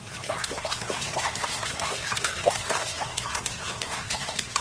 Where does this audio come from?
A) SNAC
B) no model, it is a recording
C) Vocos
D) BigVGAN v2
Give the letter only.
A